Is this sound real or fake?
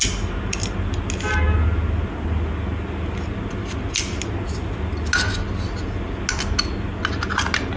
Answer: real